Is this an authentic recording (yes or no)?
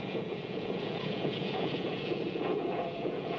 no